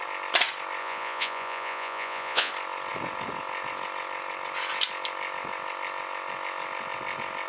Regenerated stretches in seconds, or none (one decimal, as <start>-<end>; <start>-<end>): 0.8-2.5